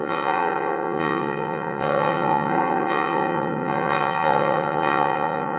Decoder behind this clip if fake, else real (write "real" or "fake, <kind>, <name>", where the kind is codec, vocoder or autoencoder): fake, vocoder, WaveNeXt